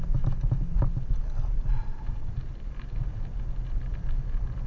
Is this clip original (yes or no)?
yes